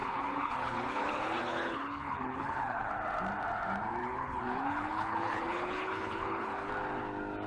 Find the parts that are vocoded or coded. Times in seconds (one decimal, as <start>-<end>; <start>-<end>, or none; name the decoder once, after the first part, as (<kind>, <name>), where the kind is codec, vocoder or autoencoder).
0.0-2.9 (codec, HILCodec); 4.0-6.7